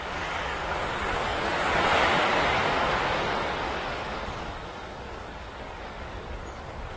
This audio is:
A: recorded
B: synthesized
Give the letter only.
B